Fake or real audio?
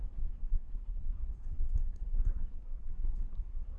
fake